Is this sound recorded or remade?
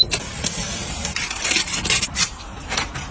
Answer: remade